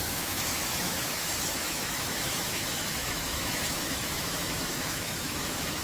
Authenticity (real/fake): fake